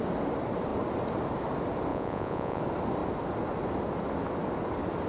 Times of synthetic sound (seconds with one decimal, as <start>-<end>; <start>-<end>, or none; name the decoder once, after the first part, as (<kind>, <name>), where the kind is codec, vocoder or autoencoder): 1.9-2.6 (vocoder, Vocos)